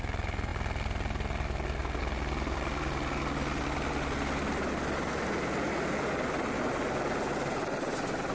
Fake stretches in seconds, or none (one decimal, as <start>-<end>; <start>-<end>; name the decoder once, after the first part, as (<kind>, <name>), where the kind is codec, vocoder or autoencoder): none